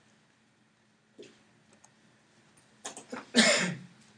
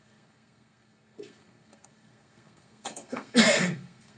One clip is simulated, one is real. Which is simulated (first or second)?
second